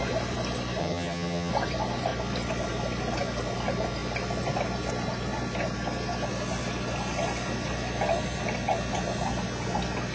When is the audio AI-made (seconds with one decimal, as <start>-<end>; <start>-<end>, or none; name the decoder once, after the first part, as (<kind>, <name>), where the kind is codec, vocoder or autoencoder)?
0.8-1.5 (vocoder, HiFi-GAN)